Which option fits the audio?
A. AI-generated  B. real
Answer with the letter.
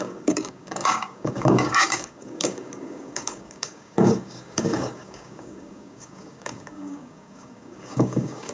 A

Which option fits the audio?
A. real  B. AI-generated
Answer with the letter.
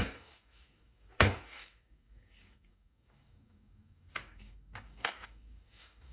B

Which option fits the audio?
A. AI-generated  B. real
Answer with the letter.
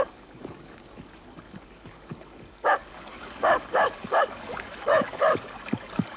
A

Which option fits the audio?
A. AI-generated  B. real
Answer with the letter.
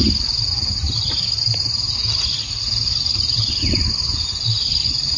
B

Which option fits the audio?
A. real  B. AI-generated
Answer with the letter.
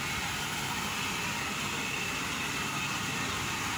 A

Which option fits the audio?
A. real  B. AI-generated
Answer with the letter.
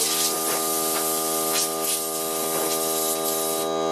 A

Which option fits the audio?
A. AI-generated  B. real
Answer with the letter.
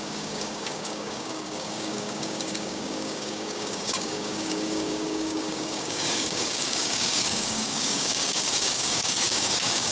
A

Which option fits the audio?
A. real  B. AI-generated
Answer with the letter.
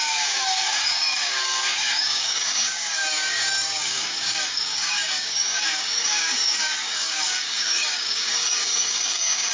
B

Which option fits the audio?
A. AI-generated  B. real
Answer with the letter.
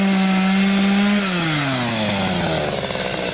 B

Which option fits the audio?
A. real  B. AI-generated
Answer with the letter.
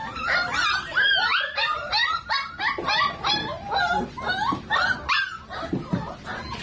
A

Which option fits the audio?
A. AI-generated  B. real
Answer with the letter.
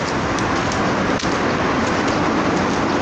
B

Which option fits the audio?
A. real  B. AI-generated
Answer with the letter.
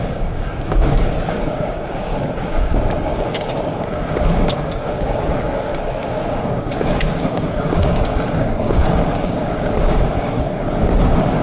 B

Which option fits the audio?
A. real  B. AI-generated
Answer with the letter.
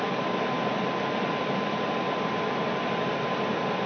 A